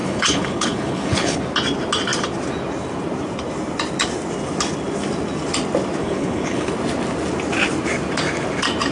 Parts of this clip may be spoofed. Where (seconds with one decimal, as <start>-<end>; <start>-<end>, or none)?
0.0-1.4; 6.0-6.7